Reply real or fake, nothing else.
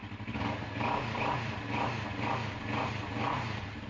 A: real